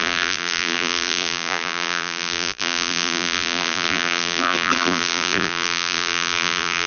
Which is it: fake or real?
fake